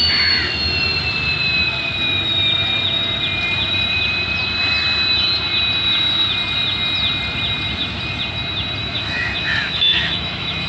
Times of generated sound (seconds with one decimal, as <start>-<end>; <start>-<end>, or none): 8.8-10.7